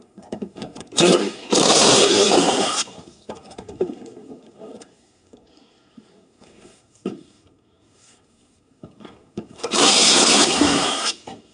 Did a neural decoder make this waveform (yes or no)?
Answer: yes